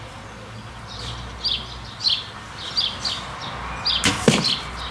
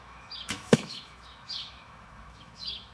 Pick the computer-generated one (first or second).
second